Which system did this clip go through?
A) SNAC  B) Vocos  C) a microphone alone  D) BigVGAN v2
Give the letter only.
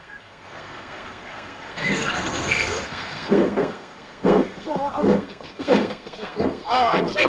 A